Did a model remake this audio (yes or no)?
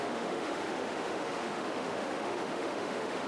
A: yes